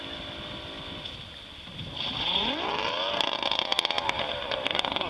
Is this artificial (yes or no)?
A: no